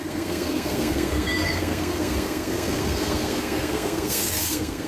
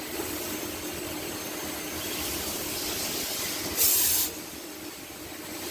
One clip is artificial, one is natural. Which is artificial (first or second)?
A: first